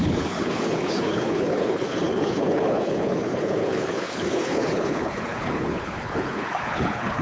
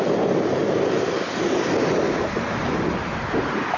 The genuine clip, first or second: second